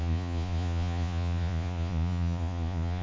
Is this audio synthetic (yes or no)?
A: yes